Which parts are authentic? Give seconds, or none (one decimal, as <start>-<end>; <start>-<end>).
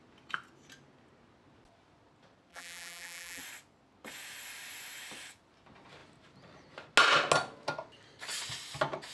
0.0-2.5; 3.4-9.1